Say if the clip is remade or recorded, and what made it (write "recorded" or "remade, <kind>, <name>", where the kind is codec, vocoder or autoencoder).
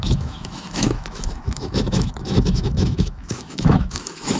remade, autoencoder, DAC-VAE